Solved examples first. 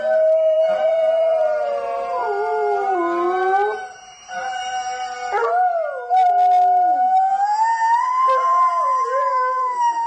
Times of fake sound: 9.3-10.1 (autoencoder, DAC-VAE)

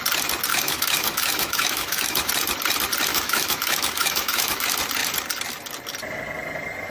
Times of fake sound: 0.5-2.3 (autoencoder, DAC-VAE); 3.1-4.6

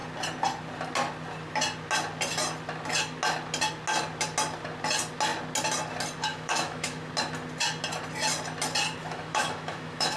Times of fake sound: 6.3-7.1 (autoencoder, DAC-VAE); 9.0-10.2

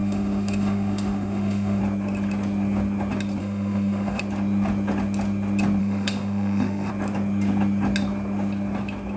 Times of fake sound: 0.0-1.8 (autoencoder, DAC-VAE); 3.4-4.2; 5.8-6.9